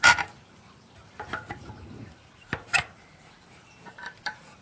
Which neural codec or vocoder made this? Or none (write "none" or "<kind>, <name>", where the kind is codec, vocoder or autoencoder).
vocoder, BigVGAN v2